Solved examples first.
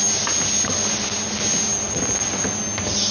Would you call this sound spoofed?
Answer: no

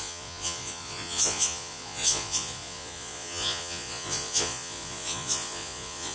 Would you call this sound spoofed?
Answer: yes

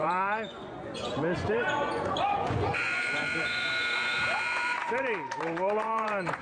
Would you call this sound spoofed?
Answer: yes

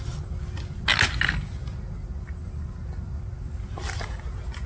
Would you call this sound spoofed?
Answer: no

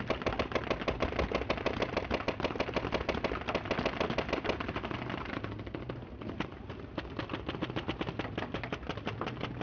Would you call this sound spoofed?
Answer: no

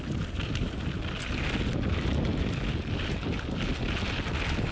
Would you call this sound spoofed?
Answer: no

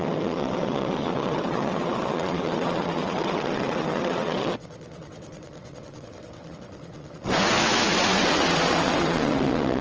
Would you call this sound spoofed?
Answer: yes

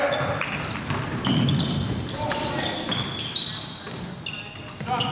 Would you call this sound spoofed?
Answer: no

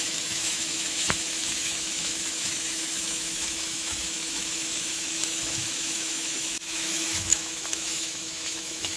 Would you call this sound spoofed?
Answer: yes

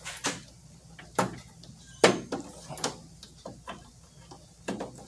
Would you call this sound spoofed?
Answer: no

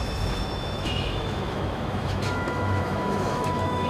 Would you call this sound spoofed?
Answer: yes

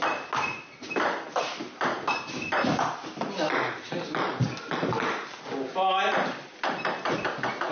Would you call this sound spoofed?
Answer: no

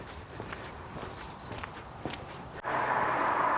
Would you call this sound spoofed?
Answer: no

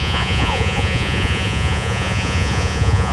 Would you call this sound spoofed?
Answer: yes